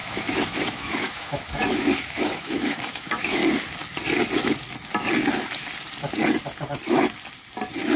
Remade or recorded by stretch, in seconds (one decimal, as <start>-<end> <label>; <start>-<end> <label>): 0.0-3.4 remade; 3.4-8.0 recorded